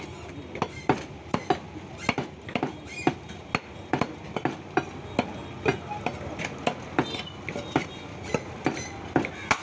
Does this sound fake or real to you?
real